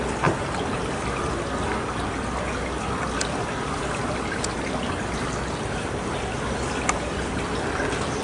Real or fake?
real